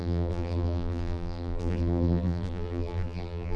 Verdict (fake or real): fake